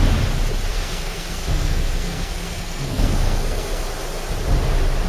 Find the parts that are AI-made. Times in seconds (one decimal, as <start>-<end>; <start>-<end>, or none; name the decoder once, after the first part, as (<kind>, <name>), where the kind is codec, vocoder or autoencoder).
0.7-3.8 (codec, SNAC)